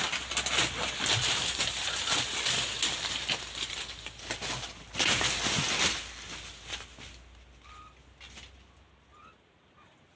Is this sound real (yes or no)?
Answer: yes